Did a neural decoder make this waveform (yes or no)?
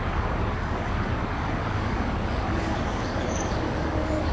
yes